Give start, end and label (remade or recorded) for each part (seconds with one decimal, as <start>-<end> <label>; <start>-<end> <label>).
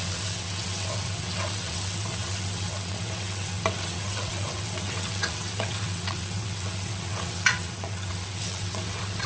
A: 0.0-9.3 remade